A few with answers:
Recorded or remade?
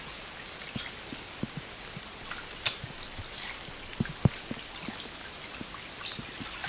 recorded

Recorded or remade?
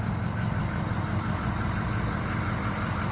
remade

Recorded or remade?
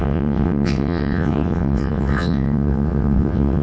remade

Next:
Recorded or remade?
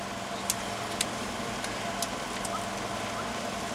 recorded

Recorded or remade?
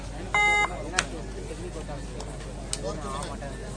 recorded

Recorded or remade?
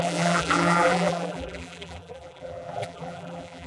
remade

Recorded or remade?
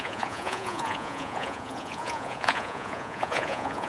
remade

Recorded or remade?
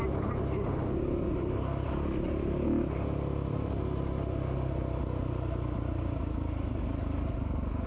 recorded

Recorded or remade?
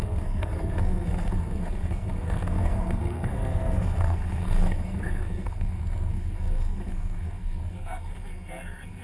remade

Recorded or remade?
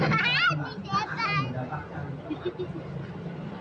recorded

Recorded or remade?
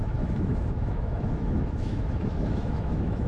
remade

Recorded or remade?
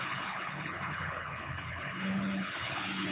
remade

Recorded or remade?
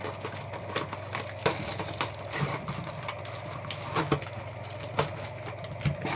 recorded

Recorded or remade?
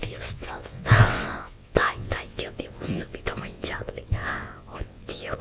remade